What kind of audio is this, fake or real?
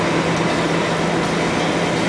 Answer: real